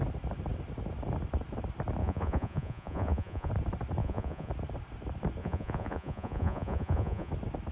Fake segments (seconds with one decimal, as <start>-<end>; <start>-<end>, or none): 2.0-3.5; 4.0-4.5; 5.4-7.3